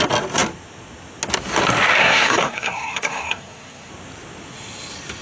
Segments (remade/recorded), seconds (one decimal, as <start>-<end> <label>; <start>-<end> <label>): 0.0-2.0 recorded; 2.0-3.9 remade; 3.9-5.2 recorded